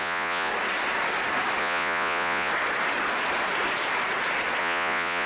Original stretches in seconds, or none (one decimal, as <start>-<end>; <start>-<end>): 0.5-1.6; 2.5-4.6